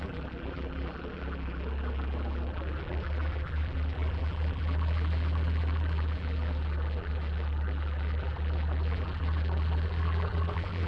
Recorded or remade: remade